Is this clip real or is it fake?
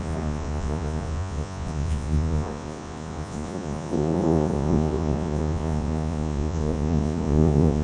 fake